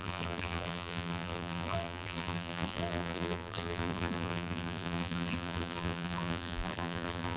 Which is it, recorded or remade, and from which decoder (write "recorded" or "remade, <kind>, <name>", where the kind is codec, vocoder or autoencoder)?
remade, vocoder, BigVGAN v2